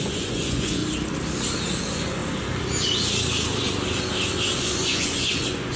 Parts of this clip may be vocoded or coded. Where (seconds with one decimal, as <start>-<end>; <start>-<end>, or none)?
0.0-0.8; 1.8-2.2; 4.6-5.8